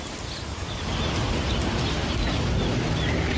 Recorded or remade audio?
recorded